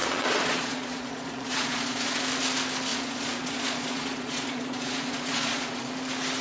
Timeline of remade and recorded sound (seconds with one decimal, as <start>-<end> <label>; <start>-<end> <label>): 0.0-2.2 remade; 2.2-2.9 recorded; 2.9-5.9 remade; 5.9-6.4 recorded